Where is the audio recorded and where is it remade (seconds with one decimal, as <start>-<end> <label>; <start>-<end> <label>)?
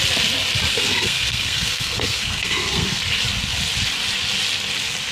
0.0-0.7 recorded; 0.7-3.0 remade; 3.0-5.1 recorded